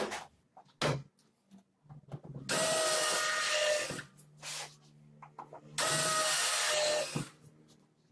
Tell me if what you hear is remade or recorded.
recorded